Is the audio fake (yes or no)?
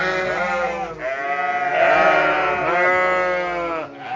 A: no